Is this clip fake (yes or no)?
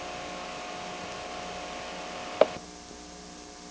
no